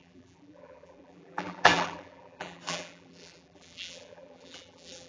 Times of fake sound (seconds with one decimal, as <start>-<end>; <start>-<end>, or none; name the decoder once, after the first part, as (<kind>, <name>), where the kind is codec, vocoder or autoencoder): 0.0-5.1 (vocoder, BigVGAN v2)